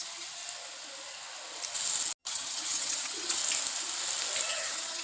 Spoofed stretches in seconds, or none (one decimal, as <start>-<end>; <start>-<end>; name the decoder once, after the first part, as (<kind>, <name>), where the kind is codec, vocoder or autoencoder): 0.0-0.4 (vocoder, HiFi-GAN); 2.2-3.4; 4.5-5.0